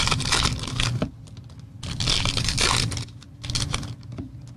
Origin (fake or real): real